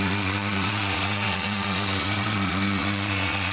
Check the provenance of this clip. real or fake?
fake